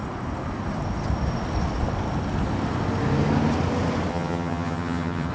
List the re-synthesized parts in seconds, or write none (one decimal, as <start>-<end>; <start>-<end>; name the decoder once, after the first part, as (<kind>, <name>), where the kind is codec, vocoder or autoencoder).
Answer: 4.1-5.3 (vocoder, HiFi-GAN)